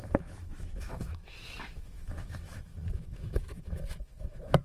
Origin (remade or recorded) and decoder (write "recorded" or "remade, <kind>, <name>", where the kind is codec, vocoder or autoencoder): remade, autoencoder, DAC-VAE